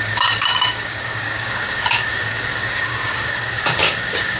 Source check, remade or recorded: remade